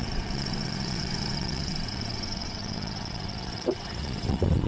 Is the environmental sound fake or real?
fake